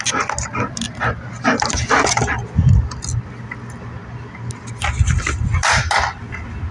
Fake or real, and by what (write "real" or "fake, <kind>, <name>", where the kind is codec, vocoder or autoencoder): real